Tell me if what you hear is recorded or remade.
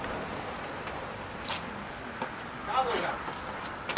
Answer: recorded